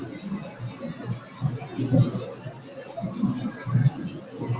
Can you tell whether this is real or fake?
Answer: real